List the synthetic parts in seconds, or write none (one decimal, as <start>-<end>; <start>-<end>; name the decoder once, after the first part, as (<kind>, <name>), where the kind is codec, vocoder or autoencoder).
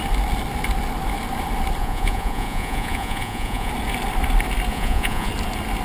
1.8-3.7 (vocoder, Vocos); 4.7-5.3